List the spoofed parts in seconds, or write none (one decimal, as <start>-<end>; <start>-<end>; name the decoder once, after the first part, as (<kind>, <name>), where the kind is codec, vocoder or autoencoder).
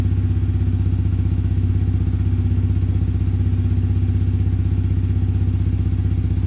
1.1-1.7 (autoencoder, DAC-VAE)